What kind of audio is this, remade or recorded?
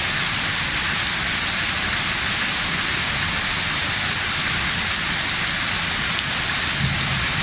recorded